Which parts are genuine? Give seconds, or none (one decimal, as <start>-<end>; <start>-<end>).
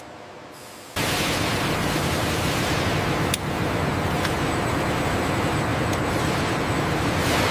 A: 0.0-1.5; 2.1-7.5